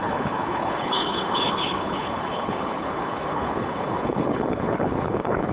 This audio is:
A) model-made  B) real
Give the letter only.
A